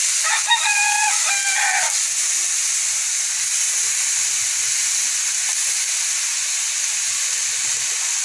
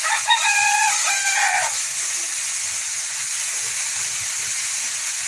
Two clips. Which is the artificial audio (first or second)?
second